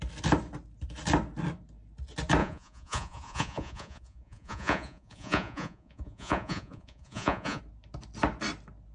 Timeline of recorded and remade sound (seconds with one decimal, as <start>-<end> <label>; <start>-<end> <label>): 0.0-2.4 recorded; 2.4-7.6 remade; 7.6-8.9 recorded